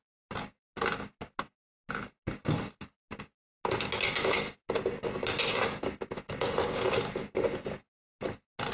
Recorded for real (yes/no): yes